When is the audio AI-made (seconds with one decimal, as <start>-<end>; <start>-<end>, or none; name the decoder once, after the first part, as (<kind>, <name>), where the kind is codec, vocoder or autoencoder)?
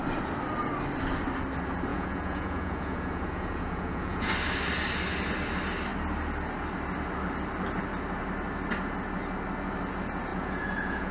1.9-4.3 (vocoder, Vocos); 10.3-11.1